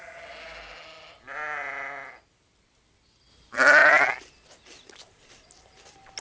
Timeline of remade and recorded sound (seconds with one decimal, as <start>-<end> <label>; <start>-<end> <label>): 0.0-6.2 recorded